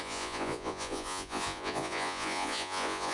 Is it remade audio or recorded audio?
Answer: remade